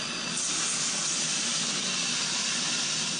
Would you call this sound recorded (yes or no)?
yes